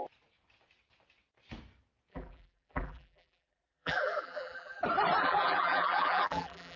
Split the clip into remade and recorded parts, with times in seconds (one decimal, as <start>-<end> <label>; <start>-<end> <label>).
0.0-2.1 recorded; 2.1-4.8 remade; 4.8-5.2 recorded; 5.2-6.8 remade